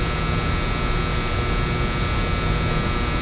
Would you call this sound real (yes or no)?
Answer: yes